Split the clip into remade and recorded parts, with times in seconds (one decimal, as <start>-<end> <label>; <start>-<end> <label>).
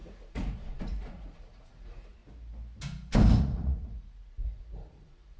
0.0-2.2 remade; 2.2-3.4 recorded; 3.4-5.4 remade